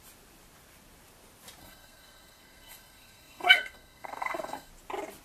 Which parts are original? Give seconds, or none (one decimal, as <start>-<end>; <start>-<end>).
0.0-1.6; 4.7-5.2